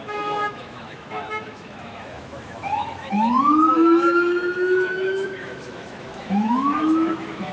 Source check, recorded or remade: remade